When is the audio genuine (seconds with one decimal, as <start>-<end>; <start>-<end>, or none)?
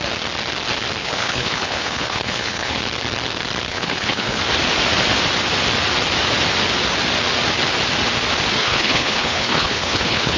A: 0.0-1.0; 2.8-3.7; 4.4-8.6